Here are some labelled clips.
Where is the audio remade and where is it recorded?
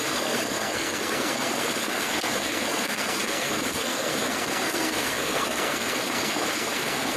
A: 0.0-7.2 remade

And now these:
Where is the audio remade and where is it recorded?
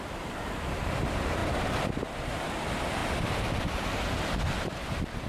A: 0.0-5.3 remade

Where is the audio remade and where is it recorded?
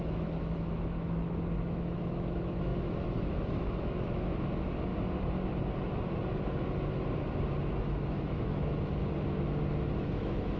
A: 0.0-4.9 remade; 4.9-7.8 recorded; 7.8-9.0 remade; 9.0-10.0 recorded; 10.0-10.6 remade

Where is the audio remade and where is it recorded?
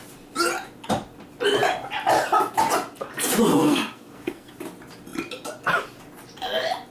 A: 0.0-3.5 recorded; 3.5-4.5 remade; 4.5-6.9 recorded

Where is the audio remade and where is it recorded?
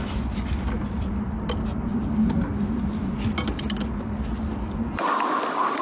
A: 0.0-5.8 recorded